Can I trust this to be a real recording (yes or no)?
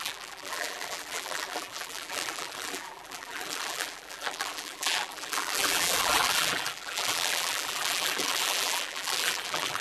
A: no